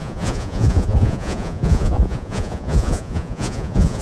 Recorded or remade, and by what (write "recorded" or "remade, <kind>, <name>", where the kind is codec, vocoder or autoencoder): remade, vocoder, Vocos